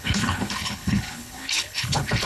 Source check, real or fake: fake